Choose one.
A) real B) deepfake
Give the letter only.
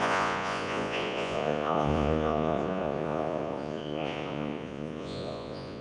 B